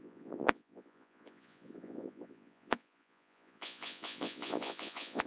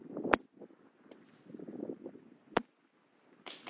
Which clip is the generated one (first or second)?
first